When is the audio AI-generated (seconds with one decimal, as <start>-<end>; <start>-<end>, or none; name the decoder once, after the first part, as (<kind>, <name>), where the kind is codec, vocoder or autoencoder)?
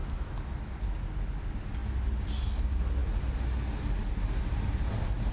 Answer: 1.4-5.3 (vocoder, BigVGAN v2)